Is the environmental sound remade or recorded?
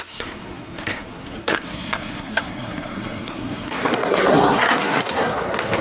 remade